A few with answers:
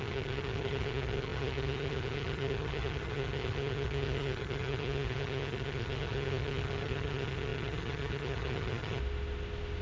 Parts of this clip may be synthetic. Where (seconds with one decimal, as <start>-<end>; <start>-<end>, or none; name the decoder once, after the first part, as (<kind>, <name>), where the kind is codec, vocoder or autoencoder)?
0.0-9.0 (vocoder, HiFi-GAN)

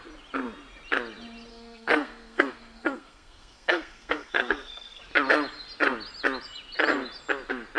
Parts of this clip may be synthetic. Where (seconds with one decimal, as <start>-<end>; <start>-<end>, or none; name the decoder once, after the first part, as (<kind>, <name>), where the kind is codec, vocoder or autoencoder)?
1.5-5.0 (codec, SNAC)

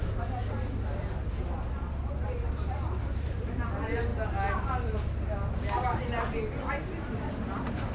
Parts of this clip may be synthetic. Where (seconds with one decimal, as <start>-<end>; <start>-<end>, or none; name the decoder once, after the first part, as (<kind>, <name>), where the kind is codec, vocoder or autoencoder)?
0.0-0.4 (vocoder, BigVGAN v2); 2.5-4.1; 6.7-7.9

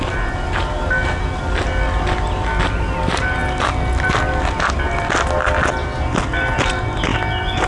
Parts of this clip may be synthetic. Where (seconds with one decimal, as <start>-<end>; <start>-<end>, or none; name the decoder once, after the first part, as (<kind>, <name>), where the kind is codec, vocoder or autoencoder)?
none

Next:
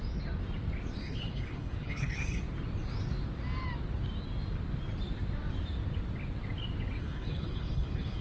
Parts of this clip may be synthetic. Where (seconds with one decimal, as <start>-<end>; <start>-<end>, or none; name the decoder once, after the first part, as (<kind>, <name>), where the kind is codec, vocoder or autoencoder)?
1.0-2.4 (codec, HILCodec); 7.0-8.2